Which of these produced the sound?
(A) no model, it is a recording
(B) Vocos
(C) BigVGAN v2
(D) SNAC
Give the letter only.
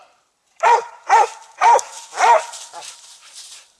C